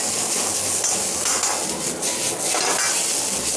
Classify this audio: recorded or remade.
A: recorded